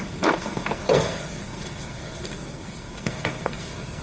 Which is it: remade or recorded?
remade